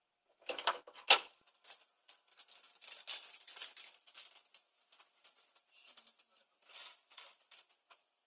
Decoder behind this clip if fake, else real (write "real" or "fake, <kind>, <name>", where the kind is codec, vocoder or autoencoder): real